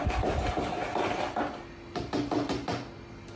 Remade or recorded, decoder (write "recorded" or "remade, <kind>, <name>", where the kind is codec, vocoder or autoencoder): recorded